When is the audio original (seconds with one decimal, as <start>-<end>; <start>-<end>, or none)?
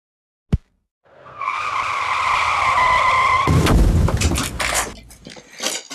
0.0-0.5; 1.6-5.9